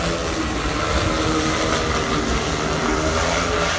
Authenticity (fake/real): real